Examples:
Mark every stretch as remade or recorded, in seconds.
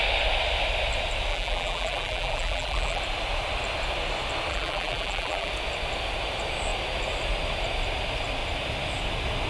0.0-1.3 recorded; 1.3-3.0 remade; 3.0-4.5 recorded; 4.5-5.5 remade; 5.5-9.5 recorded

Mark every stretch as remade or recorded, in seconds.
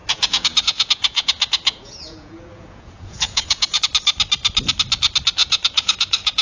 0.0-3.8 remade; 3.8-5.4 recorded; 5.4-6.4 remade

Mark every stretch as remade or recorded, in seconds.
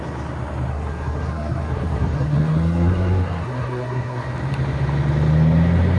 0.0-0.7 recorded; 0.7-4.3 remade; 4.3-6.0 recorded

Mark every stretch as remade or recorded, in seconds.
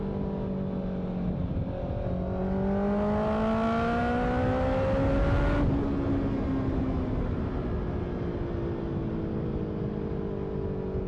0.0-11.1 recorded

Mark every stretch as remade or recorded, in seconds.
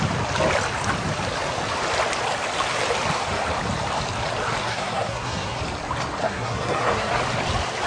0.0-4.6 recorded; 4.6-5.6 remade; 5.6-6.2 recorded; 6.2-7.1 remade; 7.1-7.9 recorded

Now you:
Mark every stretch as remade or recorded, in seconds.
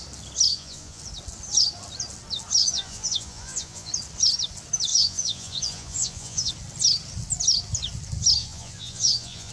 0.0-0.5 recorded; 0.5-1.0 remade; 1.0-2.6 recorded; 2.6-3.9 remade; 3.9-4.9 recorded; 4.9-6.5 remade; 6.5-8.4 recorded; 8.4-9.5 remade